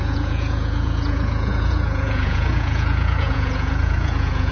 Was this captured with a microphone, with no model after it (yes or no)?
no